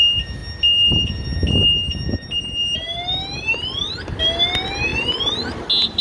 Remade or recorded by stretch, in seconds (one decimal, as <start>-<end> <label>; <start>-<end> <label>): 0.0-6.0 recorded